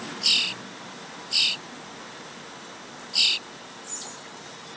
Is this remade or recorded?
recorded